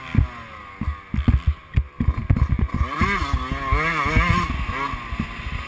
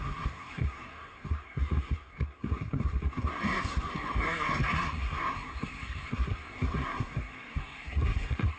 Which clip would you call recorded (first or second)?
first